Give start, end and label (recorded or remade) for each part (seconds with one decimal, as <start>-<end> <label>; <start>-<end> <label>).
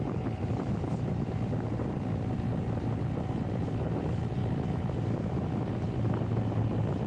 0.0-7.1 recorded